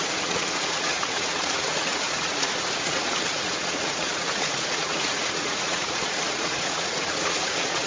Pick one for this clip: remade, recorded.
remade